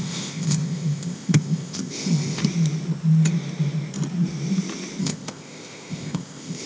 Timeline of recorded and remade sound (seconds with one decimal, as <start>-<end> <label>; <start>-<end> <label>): 0.0-2.4 remade; 2.4-5.0 recorded; 5.0-6.7 remade